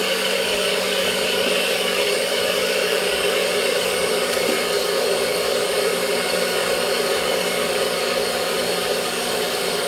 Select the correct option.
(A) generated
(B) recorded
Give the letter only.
A